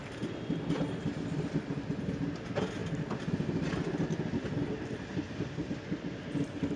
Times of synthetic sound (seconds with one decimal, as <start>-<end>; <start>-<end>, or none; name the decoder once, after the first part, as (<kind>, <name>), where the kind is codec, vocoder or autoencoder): none